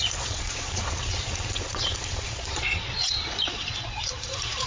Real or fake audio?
fake